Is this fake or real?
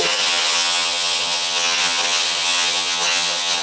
fake